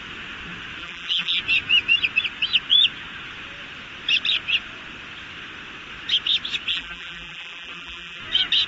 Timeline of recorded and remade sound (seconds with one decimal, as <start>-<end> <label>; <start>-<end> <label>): 0.0-0.8 recorded; 0.8-1.4 remade; 1.4-6.7 recorded; 6.7-8.2 remade; 8.2-8.7 recorded